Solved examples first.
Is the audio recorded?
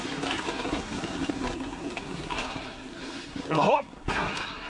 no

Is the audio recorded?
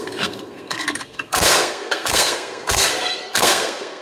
no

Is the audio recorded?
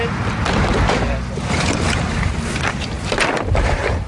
yes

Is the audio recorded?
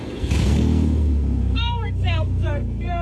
no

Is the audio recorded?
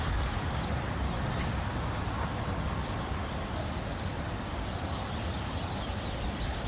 yes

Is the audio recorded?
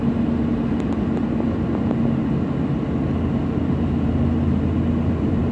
yes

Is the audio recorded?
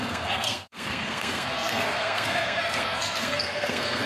no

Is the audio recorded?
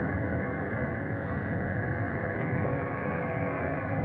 no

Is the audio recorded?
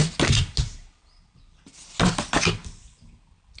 yes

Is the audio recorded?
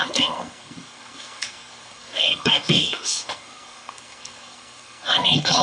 no